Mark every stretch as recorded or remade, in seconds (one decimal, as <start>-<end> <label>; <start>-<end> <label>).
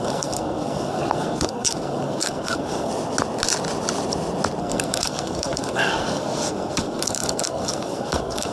0.0-2.9 remade; 2.9-4.6 recorded; 4.6-8.5 remade